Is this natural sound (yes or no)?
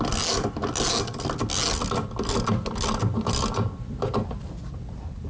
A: yes